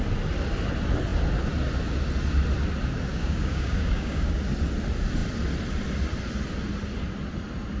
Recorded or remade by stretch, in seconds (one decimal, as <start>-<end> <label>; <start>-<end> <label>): 0.0-3.1 recorded; 3.1-4.3 remade; 4.3-7.8 recorded